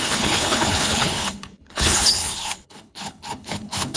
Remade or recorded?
remade